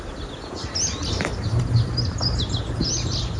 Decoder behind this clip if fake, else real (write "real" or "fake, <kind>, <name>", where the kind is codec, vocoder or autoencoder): real